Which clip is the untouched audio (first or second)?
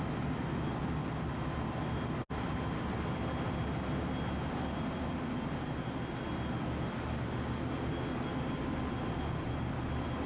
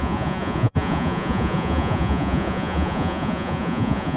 first